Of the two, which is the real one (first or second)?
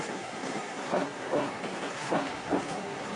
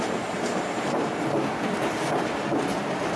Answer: second